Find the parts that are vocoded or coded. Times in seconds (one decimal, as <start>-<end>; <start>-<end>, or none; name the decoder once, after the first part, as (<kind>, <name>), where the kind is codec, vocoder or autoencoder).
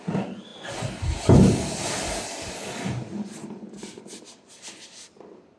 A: none